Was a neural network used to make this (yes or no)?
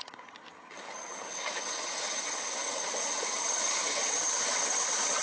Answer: yes